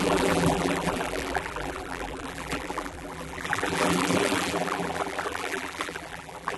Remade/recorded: remade